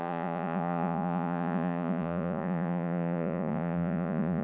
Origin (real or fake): fake